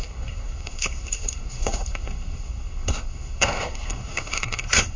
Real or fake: fake